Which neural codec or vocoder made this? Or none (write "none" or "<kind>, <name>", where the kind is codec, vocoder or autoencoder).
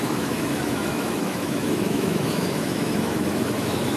autoencoder, DAC-VAE